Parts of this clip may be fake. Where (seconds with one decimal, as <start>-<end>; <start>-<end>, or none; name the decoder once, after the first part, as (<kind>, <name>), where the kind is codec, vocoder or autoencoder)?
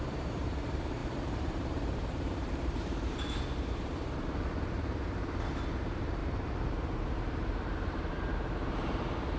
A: 0.0-9.4 (vocoder, BigVGAN v2)